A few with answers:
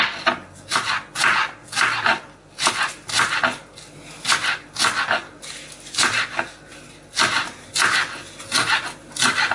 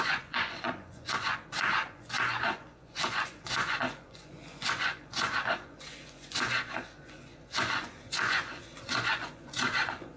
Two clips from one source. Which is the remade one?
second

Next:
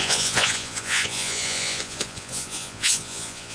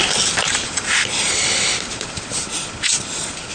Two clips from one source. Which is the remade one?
first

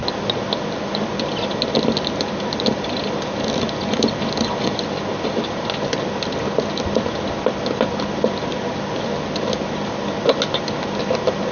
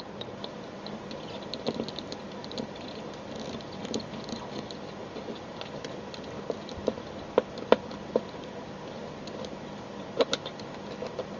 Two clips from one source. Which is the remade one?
second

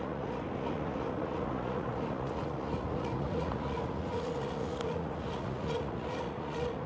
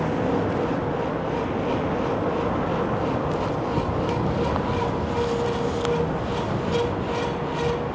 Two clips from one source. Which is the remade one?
first